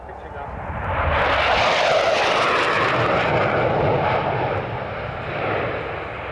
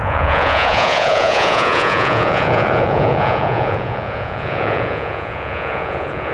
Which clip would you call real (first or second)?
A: first